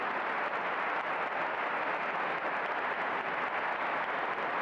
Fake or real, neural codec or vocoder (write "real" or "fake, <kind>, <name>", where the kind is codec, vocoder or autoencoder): real